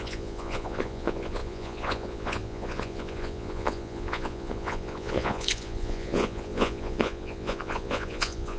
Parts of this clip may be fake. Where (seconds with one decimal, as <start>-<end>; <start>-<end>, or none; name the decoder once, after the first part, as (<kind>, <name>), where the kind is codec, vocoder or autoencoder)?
0.0-8.6 (vocoder, Vocos)

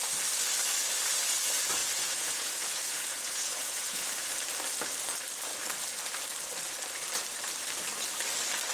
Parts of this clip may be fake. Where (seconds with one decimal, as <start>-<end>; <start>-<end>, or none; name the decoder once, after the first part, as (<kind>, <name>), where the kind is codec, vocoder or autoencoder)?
1.8-4.3 (vocoder, Vocos)

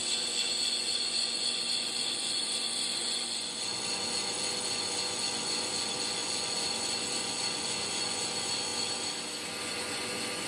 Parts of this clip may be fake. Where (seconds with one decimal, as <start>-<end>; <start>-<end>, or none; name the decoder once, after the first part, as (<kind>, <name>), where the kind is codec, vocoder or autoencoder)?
0.0-8.7 (vocoder, Vocos); 9.6-10.5

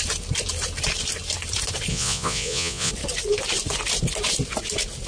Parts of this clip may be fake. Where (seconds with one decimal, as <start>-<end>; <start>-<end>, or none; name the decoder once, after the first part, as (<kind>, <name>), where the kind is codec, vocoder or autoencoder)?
1.9-2.9 (vocoder, Vocos)

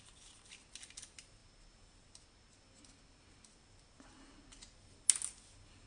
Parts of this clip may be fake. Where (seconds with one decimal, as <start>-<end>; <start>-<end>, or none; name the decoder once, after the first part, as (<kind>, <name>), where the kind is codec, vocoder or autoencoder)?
none